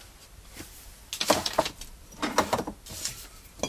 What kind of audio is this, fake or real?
real